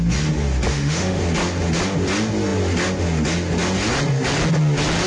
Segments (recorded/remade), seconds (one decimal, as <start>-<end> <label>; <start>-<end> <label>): 0.0-0.7 recorded; 0.7-1.2 remade; 1.2-5.1 recorded